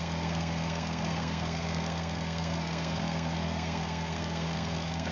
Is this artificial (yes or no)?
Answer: yes